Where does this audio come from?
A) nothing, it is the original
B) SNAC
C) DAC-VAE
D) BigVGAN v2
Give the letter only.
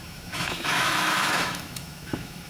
C